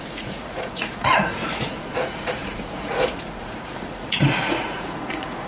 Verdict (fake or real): fake